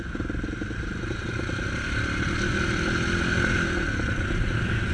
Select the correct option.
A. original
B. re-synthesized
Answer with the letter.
A